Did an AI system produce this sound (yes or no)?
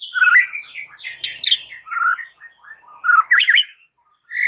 no